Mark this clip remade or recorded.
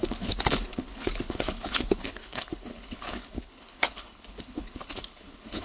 remade